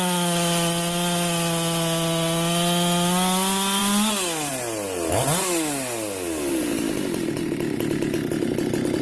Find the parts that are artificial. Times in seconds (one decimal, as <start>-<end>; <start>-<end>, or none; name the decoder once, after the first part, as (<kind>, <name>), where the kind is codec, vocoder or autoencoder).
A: none